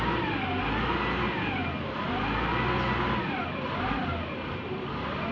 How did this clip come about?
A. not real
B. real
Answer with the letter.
B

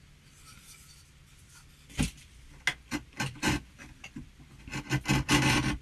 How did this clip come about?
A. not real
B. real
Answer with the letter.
B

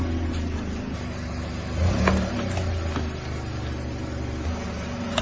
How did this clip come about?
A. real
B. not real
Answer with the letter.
A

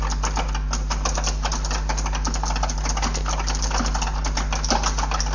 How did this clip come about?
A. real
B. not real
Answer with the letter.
A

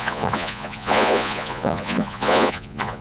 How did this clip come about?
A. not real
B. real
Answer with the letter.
A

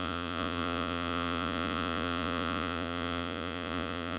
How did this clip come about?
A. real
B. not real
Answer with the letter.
B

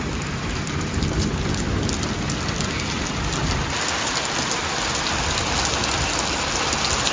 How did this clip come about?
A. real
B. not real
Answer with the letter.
A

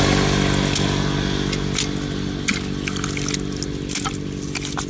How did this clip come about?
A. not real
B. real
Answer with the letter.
B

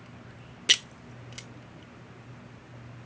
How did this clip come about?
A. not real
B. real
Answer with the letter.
B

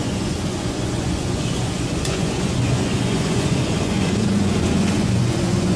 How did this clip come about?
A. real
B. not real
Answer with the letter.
B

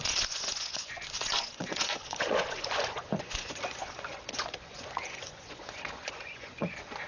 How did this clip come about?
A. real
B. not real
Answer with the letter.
B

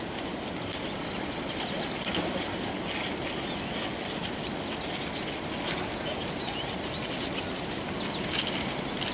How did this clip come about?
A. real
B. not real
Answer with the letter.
A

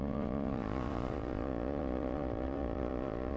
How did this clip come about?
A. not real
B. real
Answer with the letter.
A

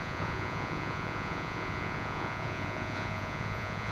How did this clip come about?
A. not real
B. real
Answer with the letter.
A